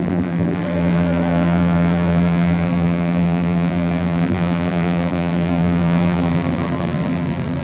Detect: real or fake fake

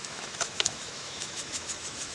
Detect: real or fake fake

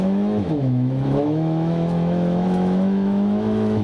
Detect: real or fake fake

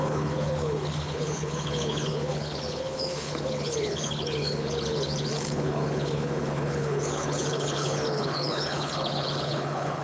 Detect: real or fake fake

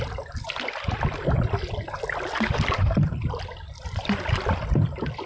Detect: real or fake real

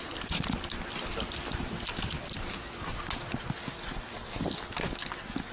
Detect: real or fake real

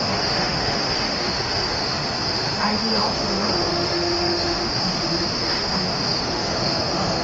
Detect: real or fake fake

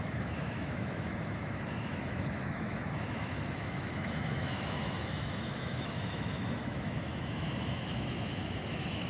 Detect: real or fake fake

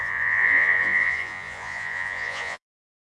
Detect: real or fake fake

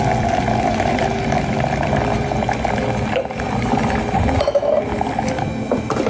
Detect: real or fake real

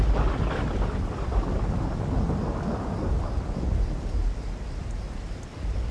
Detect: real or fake real